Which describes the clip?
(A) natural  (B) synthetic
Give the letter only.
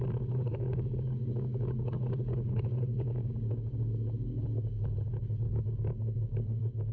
B